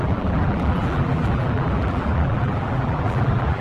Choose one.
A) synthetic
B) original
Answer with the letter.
A